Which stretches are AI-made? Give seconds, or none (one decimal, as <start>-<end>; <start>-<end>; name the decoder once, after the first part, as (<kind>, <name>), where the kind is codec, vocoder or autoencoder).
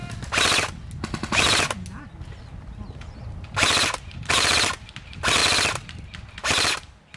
none